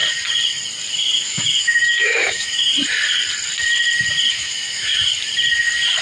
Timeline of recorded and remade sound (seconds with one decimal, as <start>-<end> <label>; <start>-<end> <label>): 0.0-0.9 recorded; 0.9-2.7 remade; 2.7-4.3 recorded; 4.3-4.9 remade; 4.9-6.0 recorded